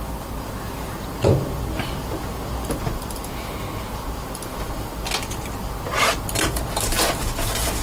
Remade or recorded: recorded